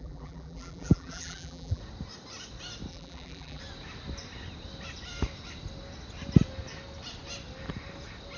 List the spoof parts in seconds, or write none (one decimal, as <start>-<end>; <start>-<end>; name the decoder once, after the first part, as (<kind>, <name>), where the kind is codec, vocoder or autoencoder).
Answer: 0.0-1.8 (vocoder, BigVGAN v2); 2.9-3.6